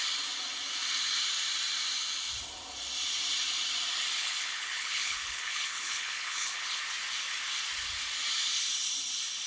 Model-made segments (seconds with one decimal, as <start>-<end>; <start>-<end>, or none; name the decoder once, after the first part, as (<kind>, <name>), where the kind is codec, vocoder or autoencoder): 4.2-6.8 (codec, HILCodec)

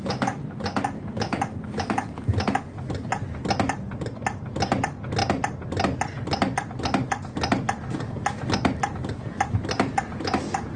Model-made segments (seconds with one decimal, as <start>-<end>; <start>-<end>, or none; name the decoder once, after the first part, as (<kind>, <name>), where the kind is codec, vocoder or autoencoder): none

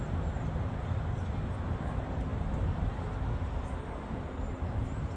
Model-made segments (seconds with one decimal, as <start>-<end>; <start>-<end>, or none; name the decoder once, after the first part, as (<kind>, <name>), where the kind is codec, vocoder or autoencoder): none

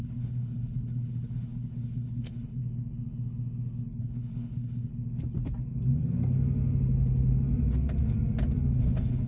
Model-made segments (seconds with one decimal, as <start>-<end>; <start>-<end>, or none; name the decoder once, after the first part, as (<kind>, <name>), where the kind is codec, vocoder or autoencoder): 0.0-2.6 (codec, HILCodec); 4.0-4.9; 8.8-9.3

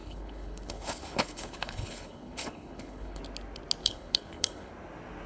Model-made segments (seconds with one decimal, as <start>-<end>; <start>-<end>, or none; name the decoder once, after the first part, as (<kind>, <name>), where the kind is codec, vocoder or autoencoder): 0.0-3.2 (codec, HILCodec); 3.8-4.7

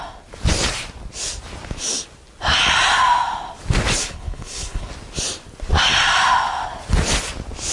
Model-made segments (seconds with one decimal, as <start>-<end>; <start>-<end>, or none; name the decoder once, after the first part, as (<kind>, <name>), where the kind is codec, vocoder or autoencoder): 4.0-4.9 (codec, HILCodec)

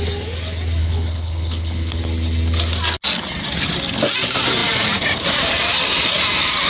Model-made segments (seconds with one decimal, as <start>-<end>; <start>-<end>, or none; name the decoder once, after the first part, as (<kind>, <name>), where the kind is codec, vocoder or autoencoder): 0.8-2.0 (codec, HILCodec)